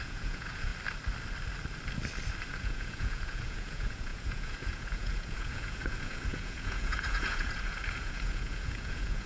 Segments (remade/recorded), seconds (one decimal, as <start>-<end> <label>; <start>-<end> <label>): 0.0-0.7 remade; 0.7-2.5 recorded; 2.5-9.3 remade